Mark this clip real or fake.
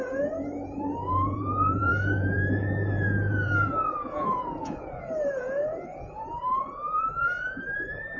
fake